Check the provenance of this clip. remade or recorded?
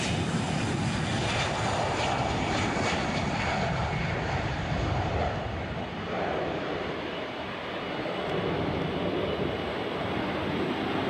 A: recorded